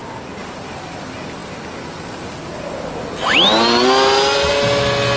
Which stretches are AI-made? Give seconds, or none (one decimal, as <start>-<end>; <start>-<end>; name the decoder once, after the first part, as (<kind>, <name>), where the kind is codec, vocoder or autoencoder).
none